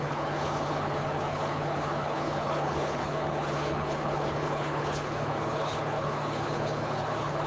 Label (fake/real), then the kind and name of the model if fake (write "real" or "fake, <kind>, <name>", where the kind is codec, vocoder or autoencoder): fake, codec, HILCodec